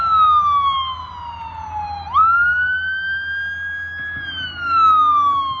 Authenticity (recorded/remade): recorded